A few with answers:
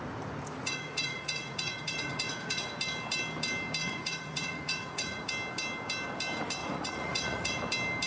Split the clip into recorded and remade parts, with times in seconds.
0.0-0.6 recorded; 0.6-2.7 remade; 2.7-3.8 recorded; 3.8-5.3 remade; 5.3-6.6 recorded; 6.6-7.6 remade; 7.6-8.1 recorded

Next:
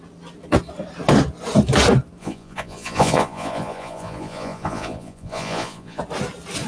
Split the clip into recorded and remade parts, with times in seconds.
0.0-2.2 recorded; 2.2-6.0 remade; 6.0-6.7 recorded

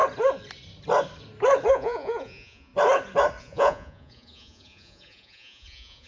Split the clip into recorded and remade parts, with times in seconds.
0.0-1.7 recorded; 1.7-2.7 remade; 2.7-3.4 recorded; 3.4-6.1 remade

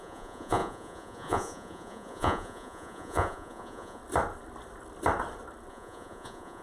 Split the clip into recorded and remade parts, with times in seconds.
0.0-4.0 remade; 4.0-5.7 recorded; 5.7-6.6 remade

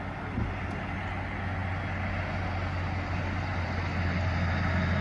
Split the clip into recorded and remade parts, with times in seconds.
0.0-5.0 recorded